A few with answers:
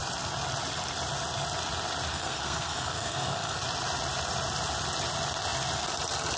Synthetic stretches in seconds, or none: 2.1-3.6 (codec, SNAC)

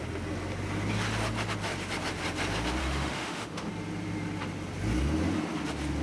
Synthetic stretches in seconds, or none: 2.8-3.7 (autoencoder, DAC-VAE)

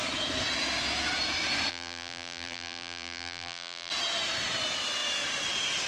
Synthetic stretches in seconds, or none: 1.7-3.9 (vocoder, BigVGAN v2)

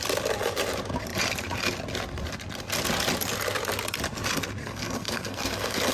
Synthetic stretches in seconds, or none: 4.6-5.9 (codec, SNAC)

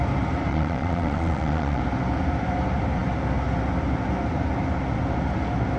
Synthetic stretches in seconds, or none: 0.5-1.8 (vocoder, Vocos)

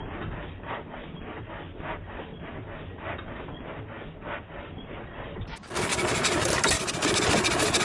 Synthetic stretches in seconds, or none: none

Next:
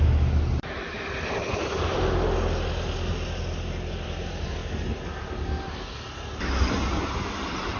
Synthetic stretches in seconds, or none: none